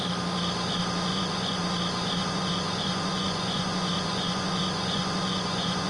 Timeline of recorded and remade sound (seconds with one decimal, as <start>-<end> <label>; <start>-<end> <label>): 0.0-1.1 recorded; 1.1-1.6 remade; 1.6-2.2 recorded; 2.2-5.9 remade